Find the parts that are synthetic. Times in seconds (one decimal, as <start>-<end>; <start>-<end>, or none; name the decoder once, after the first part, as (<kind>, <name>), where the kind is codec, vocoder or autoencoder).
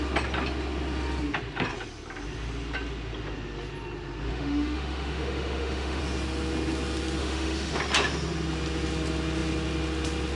4.3-6.0 (autoencoder, DAC-VAE); 7.2-7.8